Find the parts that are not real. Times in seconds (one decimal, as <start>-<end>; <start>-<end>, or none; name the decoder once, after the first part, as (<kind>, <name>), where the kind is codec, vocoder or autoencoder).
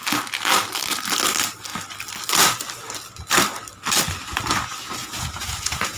5.0-6.0 (vocoder, Vocos)